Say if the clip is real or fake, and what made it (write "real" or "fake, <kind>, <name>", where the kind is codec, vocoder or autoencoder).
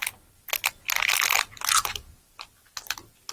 real